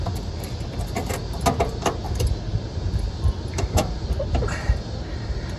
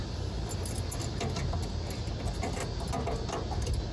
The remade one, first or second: first